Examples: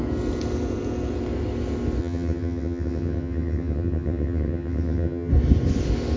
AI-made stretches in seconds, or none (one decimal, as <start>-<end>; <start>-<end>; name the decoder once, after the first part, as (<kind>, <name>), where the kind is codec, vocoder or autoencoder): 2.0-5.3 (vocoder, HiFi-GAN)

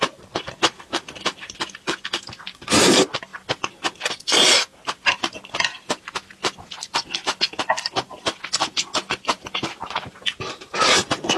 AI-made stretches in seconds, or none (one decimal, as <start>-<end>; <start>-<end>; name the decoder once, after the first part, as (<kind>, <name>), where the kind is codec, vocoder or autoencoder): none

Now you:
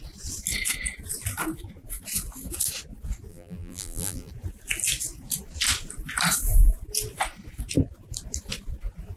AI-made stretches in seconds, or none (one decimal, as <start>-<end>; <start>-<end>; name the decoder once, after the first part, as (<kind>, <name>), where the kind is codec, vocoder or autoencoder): 3.3-4.3 (vocoder, BigVGAN v2)

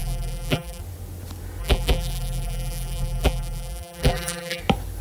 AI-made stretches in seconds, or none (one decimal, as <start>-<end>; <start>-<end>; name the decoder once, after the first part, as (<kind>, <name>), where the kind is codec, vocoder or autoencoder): 0.0-0.8 (vocoder, BigVGAN v2); 1.6-4.6

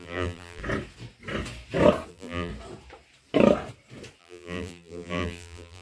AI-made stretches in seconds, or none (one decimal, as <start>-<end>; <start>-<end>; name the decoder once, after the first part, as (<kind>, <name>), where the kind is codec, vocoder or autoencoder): 0.0-0.6 (vocoder, BigVGAN v2); 2.1-2.5; 4.2-5.8

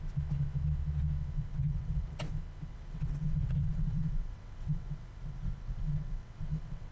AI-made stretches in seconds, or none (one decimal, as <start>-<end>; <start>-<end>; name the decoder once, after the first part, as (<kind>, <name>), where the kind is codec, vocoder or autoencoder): 1.5-2.2 (vocoder, WaveNeXt); 2.7-6.9